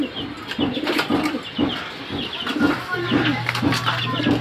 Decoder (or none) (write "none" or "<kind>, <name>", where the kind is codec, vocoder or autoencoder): none